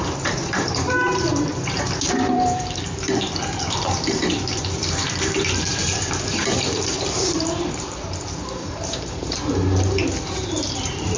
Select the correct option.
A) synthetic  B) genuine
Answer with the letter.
A